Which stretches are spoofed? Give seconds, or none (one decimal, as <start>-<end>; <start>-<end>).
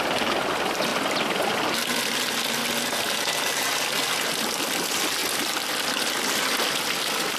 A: none